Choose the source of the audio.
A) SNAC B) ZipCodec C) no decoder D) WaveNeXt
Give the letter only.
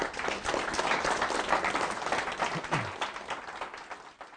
C